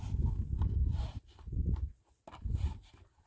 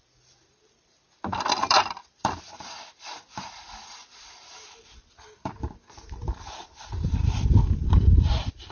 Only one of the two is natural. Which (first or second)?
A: first